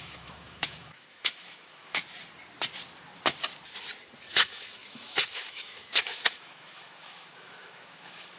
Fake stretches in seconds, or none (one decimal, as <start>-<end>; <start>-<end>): 0.0-2.0; 4.3-8.4